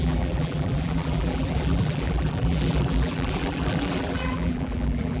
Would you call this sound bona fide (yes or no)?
no